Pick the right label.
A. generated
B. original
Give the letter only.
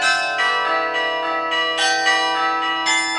B